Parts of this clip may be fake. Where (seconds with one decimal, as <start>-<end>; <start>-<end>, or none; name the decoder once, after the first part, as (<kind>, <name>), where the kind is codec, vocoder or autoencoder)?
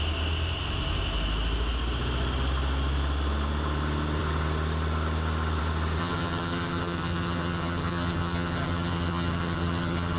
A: 6.0-10.2 (vocoder, HiFi-GAN)